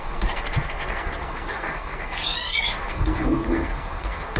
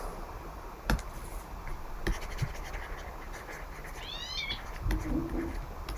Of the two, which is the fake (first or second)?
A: first